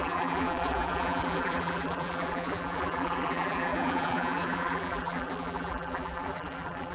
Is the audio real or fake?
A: fake